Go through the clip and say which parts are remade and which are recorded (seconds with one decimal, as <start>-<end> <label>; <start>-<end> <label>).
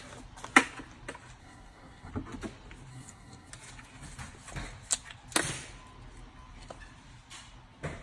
0.0-1.4 recorded; 1.4-2.1 remade; 2.1-2.9 recorded; 2.9-3.5 remade; 3.5-8.0 recorded